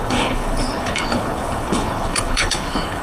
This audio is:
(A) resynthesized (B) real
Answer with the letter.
A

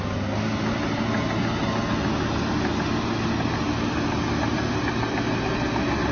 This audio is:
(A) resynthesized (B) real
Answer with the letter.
B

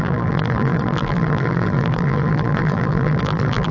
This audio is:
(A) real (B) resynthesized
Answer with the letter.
B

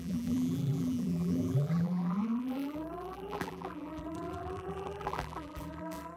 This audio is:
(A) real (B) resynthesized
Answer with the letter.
B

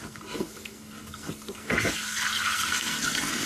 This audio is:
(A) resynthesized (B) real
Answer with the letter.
A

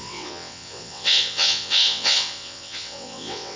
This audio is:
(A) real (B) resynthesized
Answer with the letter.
B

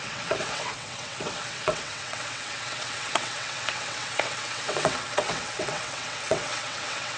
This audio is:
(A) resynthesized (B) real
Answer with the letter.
A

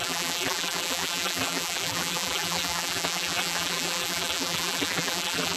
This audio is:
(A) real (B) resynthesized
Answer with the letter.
B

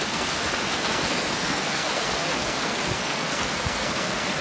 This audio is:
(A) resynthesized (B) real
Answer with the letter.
A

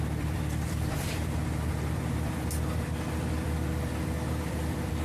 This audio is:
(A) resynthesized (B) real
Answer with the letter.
A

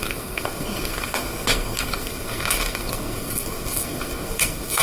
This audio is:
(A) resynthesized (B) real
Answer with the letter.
A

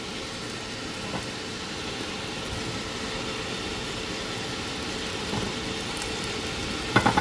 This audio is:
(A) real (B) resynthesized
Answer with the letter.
A